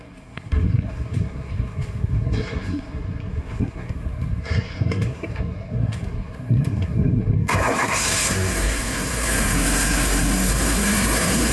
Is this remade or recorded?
remade